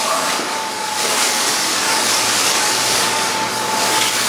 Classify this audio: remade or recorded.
remade